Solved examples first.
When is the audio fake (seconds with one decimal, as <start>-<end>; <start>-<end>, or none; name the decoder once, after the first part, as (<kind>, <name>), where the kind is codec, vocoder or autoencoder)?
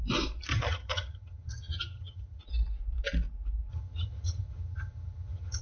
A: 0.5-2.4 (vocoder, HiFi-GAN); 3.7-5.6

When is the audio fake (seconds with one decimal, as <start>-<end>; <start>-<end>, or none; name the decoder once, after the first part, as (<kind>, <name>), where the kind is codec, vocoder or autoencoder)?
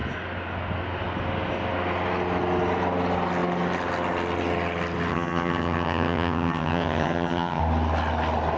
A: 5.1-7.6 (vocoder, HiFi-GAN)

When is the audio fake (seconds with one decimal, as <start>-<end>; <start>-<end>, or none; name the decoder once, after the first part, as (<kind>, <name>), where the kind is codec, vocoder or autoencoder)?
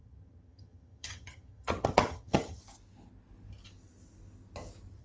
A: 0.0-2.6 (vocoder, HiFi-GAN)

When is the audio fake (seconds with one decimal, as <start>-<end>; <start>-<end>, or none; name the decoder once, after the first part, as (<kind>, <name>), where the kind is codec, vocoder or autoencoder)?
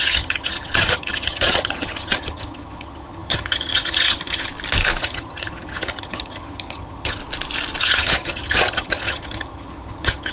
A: 0.0-4.5 (vocoder, HiFi-GAN); 5.0-7.2; 7.8-10.3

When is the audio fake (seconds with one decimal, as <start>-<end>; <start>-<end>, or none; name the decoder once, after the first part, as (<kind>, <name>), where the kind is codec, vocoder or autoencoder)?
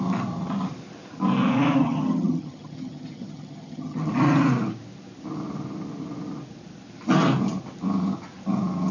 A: 1.8-4.1 (vocoder, HiFi-GAN)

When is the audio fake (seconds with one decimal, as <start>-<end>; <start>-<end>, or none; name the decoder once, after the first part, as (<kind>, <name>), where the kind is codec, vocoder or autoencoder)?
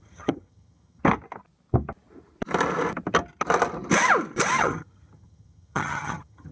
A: 0.0-1.0 (vocoder, HiFi-GAN); 4.6-6.5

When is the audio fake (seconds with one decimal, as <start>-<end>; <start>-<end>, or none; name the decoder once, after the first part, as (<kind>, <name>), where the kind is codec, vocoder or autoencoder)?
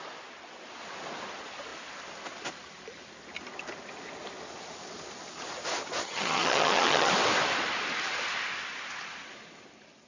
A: 6.0-7.1 (vocoder, HiFi-GAN)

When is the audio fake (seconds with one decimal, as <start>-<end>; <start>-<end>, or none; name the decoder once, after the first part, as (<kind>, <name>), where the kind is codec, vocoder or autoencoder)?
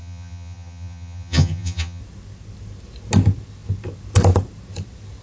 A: 0.0-2.0 (vocoder, HiFi-GAN)